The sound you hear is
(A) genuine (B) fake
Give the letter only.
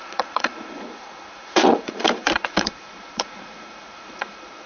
B